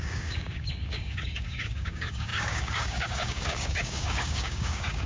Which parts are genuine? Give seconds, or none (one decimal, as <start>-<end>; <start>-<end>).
none